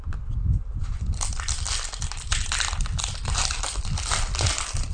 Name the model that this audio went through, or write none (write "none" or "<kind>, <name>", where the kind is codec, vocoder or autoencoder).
none